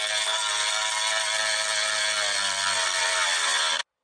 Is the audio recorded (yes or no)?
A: yes